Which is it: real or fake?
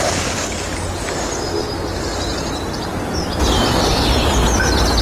real